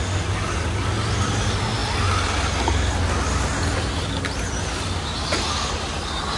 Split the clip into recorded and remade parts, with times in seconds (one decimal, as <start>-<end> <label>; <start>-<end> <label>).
0.0-6.4 recorded

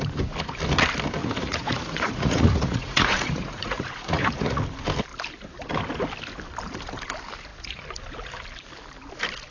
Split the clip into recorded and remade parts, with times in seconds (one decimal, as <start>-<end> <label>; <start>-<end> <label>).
0.0-1.2 recorded; 1.2-4.6 remade; 4.6-9.5 recorded

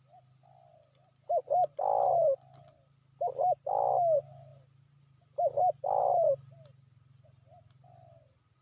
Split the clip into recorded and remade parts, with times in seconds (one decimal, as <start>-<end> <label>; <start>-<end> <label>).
0.0-8.6 recorded

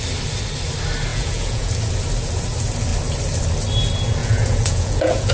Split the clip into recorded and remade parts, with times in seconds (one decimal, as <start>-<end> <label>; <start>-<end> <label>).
0.0-1.1 recorded; 1.1-1.7 remade; 1.7-4.2 recorded; 4.2-5.3 remade